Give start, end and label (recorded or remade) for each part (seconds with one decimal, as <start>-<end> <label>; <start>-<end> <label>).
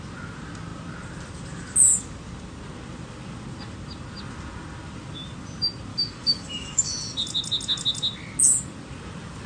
0.0-5.9 recorded; 5.9-6.9 remade; 6.9-9.5 recorded